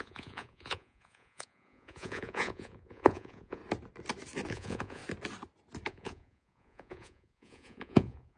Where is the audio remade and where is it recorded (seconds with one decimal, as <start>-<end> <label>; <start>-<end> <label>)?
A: 0.0-3.6 remade; 3.6-4.5 recorded; 4.5-5.0 remade; 5.0-5.9 recorded; 5.9-8.4 remade